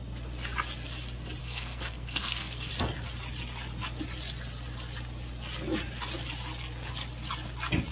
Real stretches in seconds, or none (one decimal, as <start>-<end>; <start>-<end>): 0.0-1.4; 2.7-7.9